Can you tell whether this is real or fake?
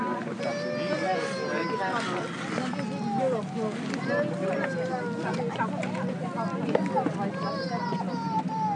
real